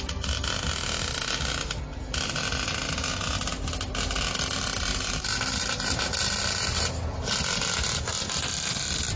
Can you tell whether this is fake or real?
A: real